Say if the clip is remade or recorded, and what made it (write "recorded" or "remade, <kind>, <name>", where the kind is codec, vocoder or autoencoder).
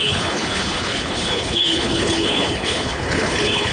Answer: remade, codec, HILCodec